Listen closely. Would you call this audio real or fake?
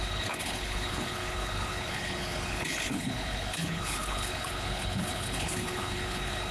fake